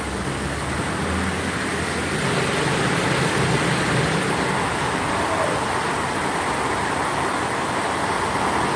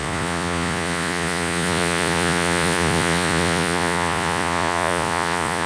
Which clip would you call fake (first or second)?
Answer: second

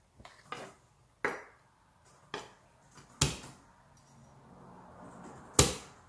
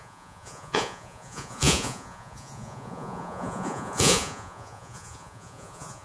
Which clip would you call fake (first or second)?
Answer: second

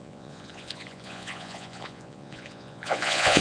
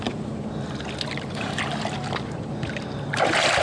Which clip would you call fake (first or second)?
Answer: first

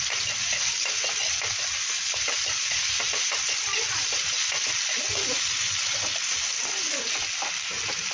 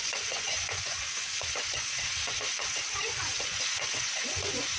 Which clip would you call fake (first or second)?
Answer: second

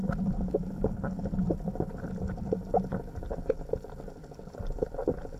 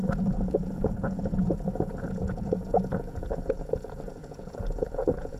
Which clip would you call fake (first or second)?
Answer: second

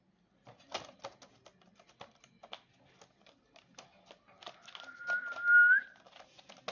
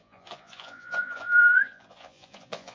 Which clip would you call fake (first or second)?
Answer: second